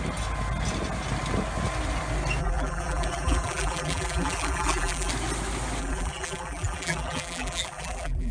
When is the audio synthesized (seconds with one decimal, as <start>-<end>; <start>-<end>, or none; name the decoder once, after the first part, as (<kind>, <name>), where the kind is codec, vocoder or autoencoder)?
2.4-5.1 (vocoder, BigVGAN v2); 5.8-8.3